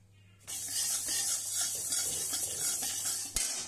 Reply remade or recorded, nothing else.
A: recorded